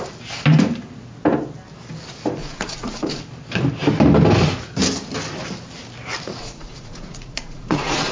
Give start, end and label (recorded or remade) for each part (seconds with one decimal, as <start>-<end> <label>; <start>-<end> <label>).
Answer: 0.0-2.4 recorded; 2.4-3.2 remade; 3.2-6.4 recorded; 6.4-8.1 remade